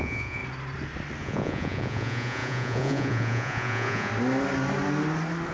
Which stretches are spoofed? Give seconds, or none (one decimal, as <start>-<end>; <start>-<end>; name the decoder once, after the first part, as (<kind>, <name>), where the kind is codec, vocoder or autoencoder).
0.0-0.4 (vocoder, Vocos); 1.2-4.1